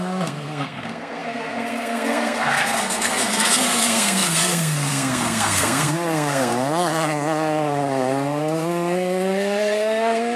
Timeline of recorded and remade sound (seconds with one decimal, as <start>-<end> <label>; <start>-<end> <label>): 0.0-10.4 remade